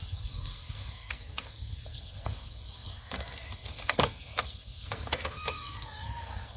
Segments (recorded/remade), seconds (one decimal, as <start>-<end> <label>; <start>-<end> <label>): 0.0-6.6 remade